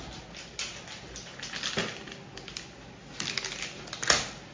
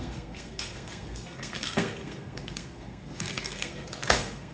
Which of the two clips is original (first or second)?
first